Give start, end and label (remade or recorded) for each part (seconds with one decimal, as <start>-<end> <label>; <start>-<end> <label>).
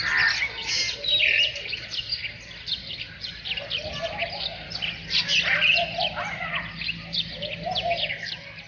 0.0-8.7 recorded